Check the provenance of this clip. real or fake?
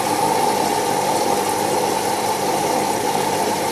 real